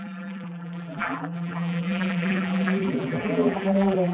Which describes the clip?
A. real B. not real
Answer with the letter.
B